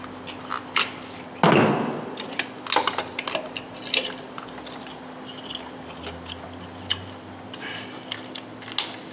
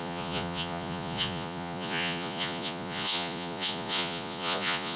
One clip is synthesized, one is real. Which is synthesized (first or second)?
second